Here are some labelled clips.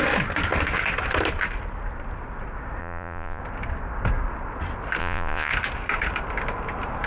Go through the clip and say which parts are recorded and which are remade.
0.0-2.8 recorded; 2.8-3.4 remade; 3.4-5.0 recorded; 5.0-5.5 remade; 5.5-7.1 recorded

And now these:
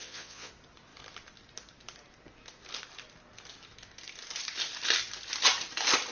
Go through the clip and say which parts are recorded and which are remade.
0.0-0.5 remade; 0.5-6.1 recorded

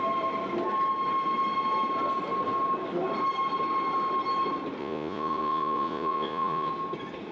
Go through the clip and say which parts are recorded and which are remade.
0.0-4.8 recorded; 4.8-6.7 remade; 6.7-7.3 recorded